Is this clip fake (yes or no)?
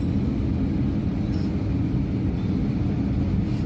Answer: no